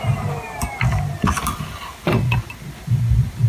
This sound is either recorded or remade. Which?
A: remade